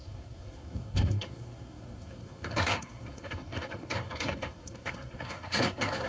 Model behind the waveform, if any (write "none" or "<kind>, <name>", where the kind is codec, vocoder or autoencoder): codec, SNAC